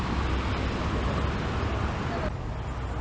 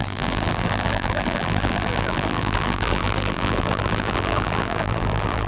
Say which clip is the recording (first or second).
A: first